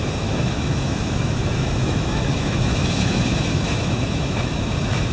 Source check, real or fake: fake